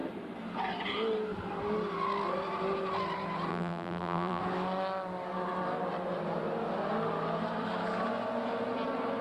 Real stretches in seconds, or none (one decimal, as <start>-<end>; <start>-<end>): 0.0-3.5; 4.4-9.2